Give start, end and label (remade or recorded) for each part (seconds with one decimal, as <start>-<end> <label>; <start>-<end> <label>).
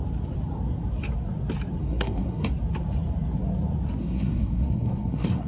0.0-1.8 recorded; 1.8-2.5 remade; 2.5-4.0 recorded; 4.0-5.5 remade